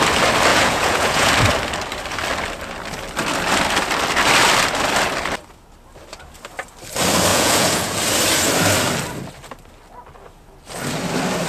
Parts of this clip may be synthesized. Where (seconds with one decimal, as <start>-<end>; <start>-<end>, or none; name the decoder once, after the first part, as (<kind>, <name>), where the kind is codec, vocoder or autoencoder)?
0.5-1.3 (vocoder, Vocos); 7.3-8.0